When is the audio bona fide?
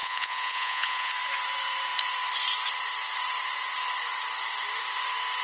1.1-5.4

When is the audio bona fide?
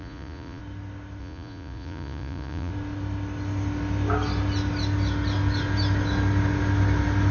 0.6-1.2; 2.7-7.3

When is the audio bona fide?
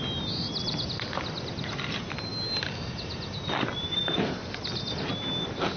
0.0-5.8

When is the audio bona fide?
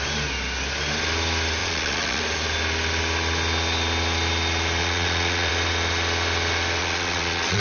0.0-1.6; 2.2-4.8; 5.5-6.8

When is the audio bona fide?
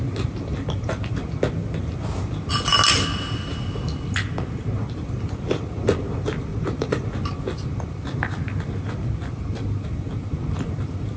0.0-6.5; 7.0-11.2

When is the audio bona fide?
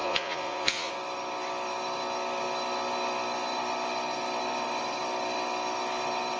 0.9-6.4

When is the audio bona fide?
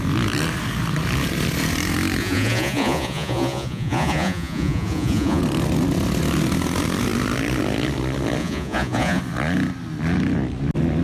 0.0-2.2; 5.4-8.4; 9.2-11.0